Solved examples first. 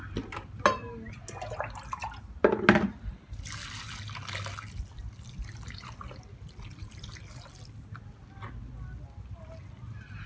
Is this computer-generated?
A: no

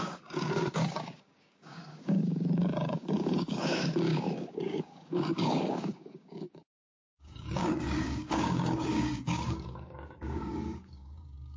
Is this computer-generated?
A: yes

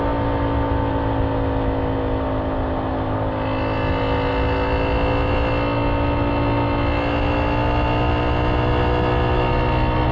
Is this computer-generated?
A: no